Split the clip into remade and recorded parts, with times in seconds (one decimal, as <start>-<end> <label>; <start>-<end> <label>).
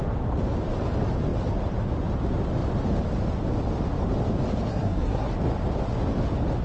0.0-4.7 recorded; 4.7-5.3 remade; 5.3-6.6 recorded